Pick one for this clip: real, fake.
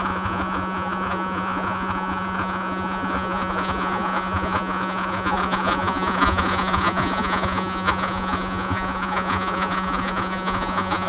fake